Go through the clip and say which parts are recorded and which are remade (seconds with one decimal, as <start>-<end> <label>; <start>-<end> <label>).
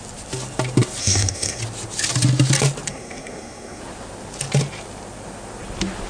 0.0-1.0 recorded; 1.0-1.6 remade; 1.6-2.9 recorded; 2.9-3.8 remade; 3.8-6.1 recorded